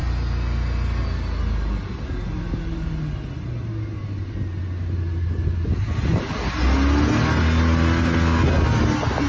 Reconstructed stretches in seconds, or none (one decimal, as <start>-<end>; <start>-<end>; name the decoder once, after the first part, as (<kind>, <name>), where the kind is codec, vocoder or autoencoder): none